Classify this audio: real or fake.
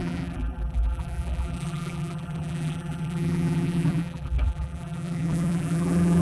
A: fake